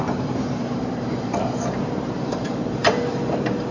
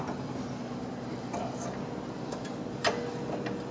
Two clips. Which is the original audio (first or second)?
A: second